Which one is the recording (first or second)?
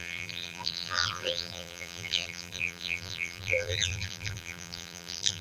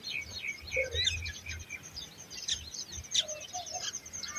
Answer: second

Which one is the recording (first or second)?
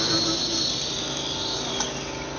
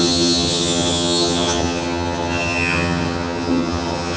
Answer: first